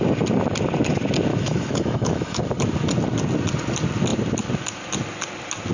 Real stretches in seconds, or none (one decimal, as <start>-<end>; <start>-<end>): 0.0-1.3; 2.4-5.7